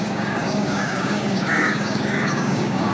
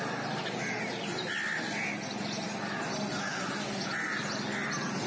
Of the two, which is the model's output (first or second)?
first